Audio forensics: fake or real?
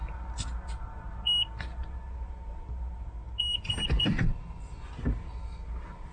real